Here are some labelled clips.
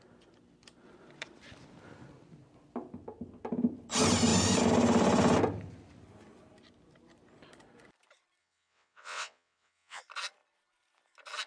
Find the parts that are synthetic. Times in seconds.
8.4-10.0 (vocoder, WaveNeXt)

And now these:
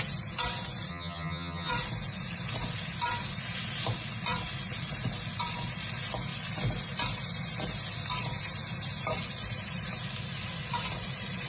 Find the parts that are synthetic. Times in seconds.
0.9-1.7 (vocoder, HiFi-GAN)

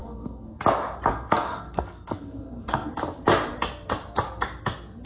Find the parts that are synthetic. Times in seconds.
0.0-0.6 (codec, SNAC); 1.1-2.9